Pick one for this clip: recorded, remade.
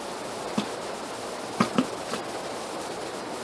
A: recorded